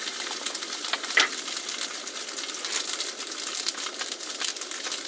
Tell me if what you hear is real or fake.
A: real